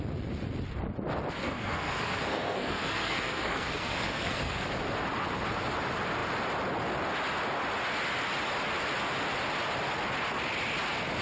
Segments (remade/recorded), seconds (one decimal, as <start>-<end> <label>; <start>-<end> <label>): 0.0-1.4 recorded; 1.4-4.7 remade; 4.7-11.2 recorded